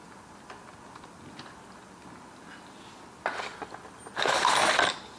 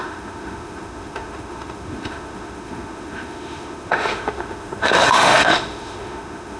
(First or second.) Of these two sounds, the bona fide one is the first